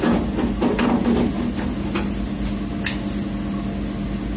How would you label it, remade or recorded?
recorded